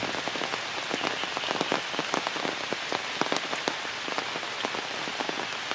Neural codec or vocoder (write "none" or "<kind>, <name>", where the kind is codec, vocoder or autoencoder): none